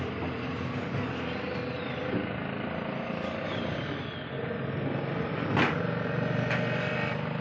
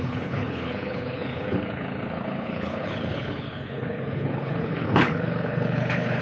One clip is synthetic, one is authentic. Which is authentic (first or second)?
first